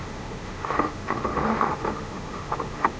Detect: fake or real fake